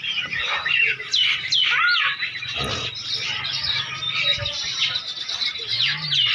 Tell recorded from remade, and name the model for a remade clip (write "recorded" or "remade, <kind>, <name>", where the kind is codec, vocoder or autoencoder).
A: recorded